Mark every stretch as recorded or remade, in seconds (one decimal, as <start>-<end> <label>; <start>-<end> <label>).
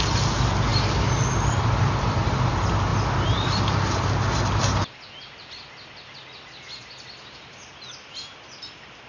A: 0.0-0.7 recorded; 0.7-2.5 remade; 2.5-9.1 recorded